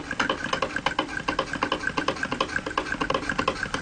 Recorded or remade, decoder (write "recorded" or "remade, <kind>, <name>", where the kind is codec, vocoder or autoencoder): recorded